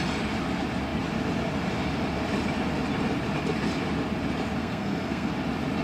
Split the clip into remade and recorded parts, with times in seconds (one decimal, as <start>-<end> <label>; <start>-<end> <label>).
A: 0.0-4.6 recorded; 4.6-5.3 remade; 5.3-5.8 recorded